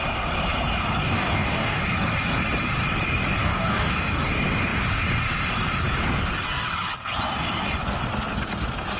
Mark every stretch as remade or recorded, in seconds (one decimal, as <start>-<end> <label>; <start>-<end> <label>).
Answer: 0.0-1.0 recorded; 1.0-1.8 remade; 1.8-3.4 recorded; 3.4-4.2 remade; 4.2-9.0 recorded